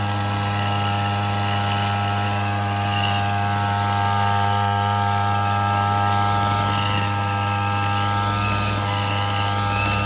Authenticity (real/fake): real